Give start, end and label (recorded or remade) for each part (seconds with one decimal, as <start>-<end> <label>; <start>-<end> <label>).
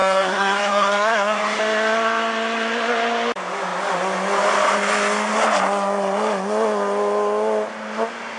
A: 0.0-1.6 remade; 1.6-8.4 recorded